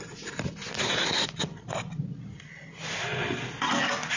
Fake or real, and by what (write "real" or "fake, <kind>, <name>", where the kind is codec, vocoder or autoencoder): real